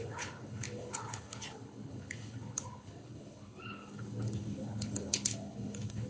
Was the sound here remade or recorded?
remade